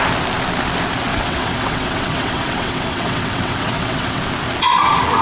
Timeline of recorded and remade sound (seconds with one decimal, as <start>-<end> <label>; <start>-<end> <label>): 0.0-1.1 recorded; 1.1-4.2 remade; 4.2-5.2 recorded